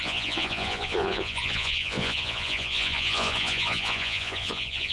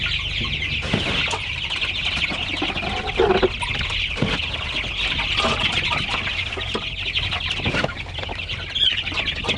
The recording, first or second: second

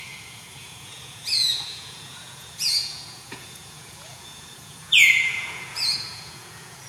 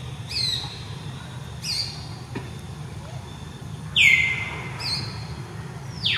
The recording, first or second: second